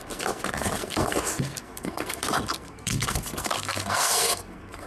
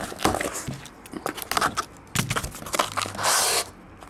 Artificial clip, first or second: first